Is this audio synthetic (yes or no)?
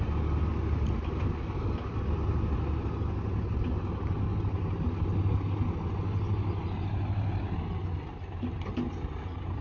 no